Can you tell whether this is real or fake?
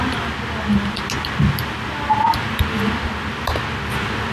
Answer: real